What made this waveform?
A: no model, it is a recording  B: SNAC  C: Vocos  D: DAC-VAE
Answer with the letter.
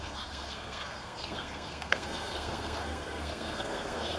B